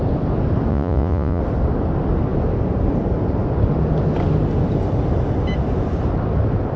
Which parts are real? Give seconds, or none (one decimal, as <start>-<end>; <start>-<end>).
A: 0.0-0.7; 1.4-6.8